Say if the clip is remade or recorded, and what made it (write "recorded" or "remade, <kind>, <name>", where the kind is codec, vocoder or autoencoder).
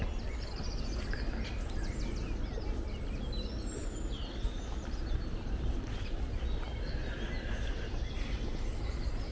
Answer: recorded